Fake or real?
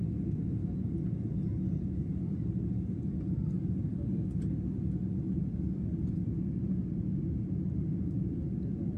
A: real